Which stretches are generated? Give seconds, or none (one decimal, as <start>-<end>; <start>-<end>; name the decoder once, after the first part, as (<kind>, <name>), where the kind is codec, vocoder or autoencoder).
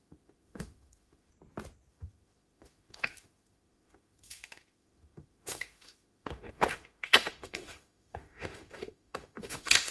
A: 0.0-1.3 (autoencoder, DAC-VAE); 1.9-9.9